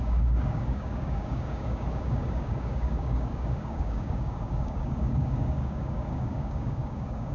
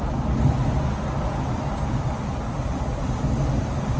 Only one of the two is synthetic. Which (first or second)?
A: first